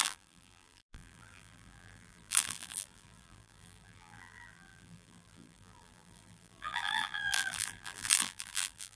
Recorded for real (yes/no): no